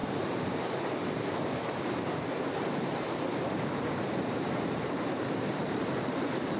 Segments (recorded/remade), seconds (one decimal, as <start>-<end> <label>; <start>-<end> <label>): 0.0-6.6 remade